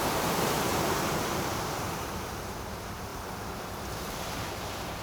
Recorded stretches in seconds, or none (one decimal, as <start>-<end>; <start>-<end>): none